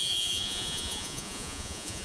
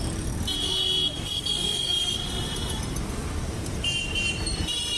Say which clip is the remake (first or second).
first